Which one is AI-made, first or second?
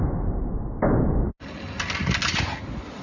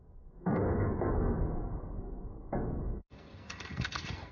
second